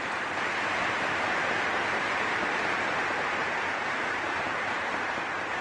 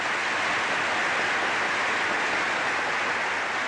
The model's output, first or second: first